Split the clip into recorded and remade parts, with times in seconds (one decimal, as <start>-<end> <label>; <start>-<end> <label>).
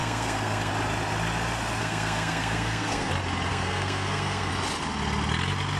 0.0-0.7 remade; 0.7-1.8 recorded; 1.8-3.1 remade; 3.1-3.5 recorded; 3.5-4.5 remade; 4.5-5.8 recorded